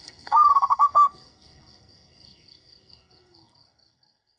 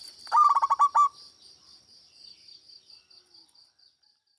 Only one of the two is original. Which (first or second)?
second